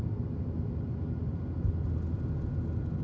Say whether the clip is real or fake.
real